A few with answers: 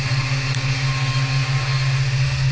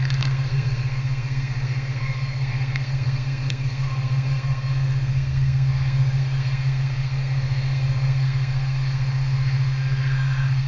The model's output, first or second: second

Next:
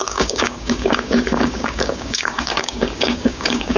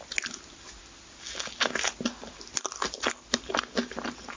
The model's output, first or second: first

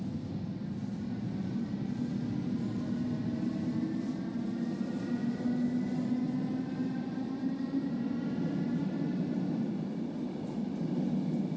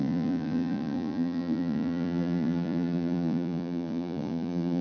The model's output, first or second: second